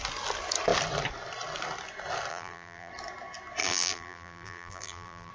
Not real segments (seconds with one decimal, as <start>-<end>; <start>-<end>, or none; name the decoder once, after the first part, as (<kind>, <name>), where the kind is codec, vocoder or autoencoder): 2.3-2.9 (vocoder, BigVGAN v2); 3.6-5.3

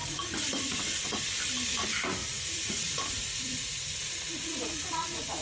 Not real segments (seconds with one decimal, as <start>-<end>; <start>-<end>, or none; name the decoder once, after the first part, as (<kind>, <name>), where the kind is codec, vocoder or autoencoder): 0.0-1.2 (vocoder, Vocos); 2.2-5.4

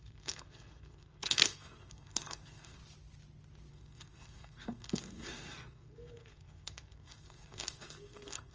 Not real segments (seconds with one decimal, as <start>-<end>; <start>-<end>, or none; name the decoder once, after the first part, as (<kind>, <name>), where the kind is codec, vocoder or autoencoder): 0.0-2.8 (codec, SNAC); 3.7-8.5

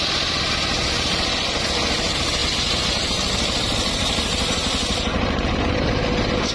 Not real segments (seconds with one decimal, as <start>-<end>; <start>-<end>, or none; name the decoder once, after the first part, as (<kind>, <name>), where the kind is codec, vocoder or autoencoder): none

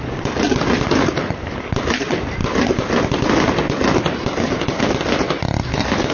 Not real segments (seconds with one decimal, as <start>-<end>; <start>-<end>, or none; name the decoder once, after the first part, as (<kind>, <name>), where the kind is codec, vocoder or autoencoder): none

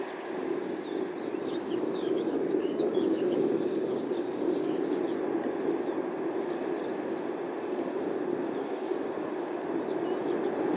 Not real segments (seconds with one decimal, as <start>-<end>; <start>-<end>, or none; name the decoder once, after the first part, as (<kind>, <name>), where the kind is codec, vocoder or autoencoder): 1.4-5.0 (codec, DAC); 8.6-9.1

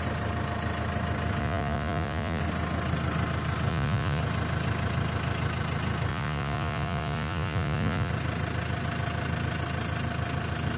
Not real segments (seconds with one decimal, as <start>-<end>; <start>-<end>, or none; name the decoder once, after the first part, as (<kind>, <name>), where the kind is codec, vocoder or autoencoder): 1.4-2.4 (vocoder, Vocos); 3.7-4.2; 6.1-8.1

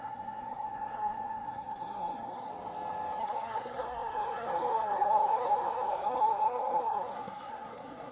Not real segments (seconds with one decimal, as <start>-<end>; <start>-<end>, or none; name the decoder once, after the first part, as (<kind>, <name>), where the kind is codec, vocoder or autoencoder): 0.0-2.5 (codec, SNAC); 3.2-8.1